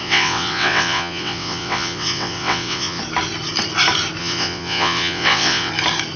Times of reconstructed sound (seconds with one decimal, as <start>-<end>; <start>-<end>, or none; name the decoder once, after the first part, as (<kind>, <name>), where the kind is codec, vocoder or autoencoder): 0.0-3.0 (vocoder, WaveNeXt); 4.2-5.7